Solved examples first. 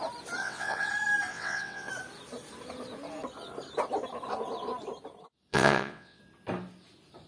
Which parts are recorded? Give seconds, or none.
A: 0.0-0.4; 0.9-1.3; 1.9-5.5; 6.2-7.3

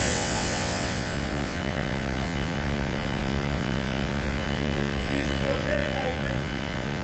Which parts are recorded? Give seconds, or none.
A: none

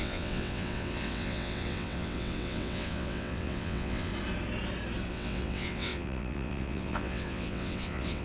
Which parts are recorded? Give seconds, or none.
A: 4.1-5.1

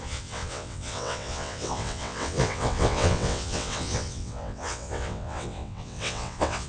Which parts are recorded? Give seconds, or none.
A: none

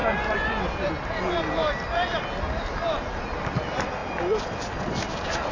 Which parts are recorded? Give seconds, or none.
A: 0.0-5.5

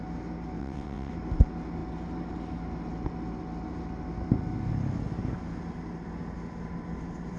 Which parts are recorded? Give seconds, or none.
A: 0.0-0.6; 1.1-7.4